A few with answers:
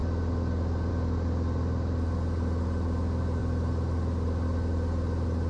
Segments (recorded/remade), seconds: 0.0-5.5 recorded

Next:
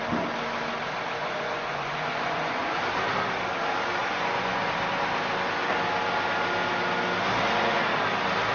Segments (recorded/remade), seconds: 0.0-1.2 recorded; 1.2-2.8 remade; 2.8-4.0 recorded; 4.0-4.6 remade; 4.6-8.5 recorded

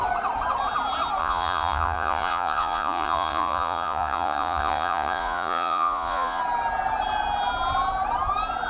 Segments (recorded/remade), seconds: 0.0-1.2 recorded; 1.2-6.4 remade; 6.4-8.7 recorded

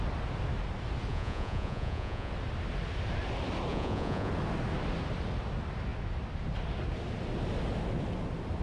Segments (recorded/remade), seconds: 0.0-1.1 recorded; 1.1-2.3 remade; 2.3-3.7 recorded; 3.7-4.3 remade; 4.3-8.6 recorded

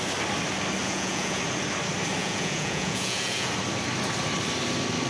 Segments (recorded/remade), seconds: 0.0-0.8 recorded; 0.8-1.4 remade; 1.4-2.2 recorded; 2.2-3.5 remade; 3.5-5.1 recorded